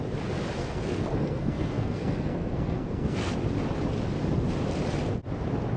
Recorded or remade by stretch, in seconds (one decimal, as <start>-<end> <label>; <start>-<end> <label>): 0.0-0.6 recorded; 0.6-3.3 remade; 3.3-5.8 recorded